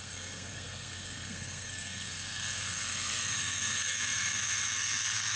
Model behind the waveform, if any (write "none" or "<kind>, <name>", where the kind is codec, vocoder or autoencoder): codec, SNAC